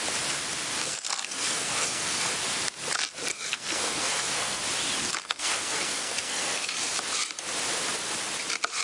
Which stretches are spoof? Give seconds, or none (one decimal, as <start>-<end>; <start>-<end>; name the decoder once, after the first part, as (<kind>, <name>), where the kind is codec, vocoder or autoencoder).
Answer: 0.8-2.3 (codec, SNAC); 3.3-4.6; 5.0-6.7